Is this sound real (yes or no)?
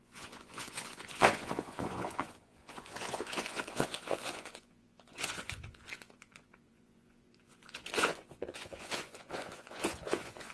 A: no